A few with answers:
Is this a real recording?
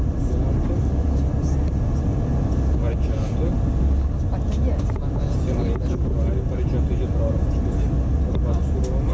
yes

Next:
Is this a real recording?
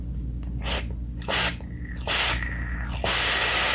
yes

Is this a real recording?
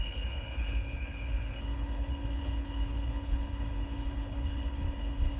no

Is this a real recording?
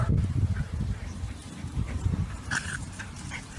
no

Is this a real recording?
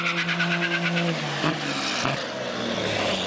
yes